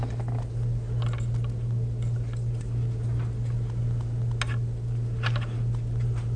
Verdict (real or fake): real